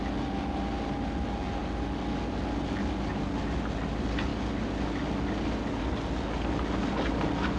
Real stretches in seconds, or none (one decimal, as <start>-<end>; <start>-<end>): 0.0-7.6